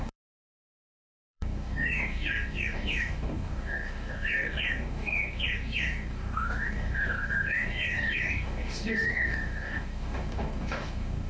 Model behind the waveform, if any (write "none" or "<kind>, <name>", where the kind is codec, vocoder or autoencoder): codec, DAC